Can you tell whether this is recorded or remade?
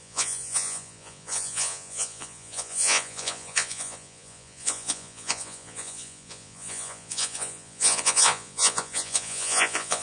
remade